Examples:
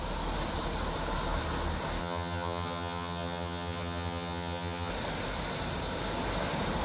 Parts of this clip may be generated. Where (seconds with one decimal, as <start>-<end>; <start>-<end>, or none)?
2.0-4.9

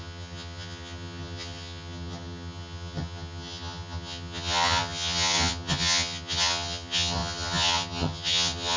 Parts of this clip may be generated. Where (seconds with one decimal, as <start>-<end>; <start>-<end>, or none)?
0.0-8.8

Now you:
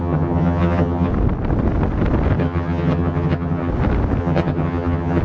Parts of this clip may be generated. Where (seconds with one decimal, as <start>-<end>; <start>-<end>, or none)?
0.0-1.1; 2.4-3.7; 4.2-5.2